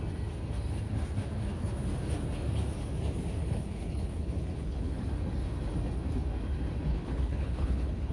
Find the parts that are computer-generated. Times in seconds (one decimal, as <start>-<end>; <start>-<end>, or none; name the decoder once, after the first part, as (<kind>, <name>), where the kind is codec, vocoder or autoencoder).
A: 3.4-5.0 (codec, HILCodec); 6.9-8.1